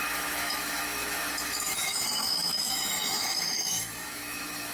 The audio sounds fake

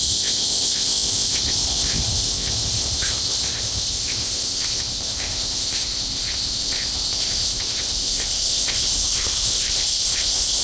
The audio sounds fake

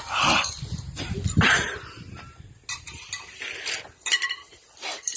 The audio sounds real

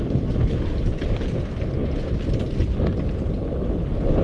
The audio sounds real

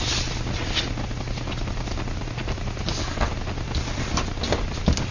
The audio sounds real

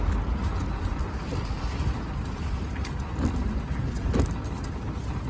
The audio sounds real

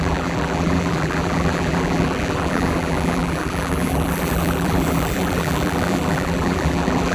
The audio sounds fake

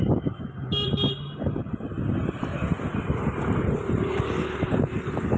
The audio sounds real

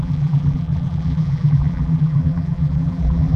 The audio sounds fake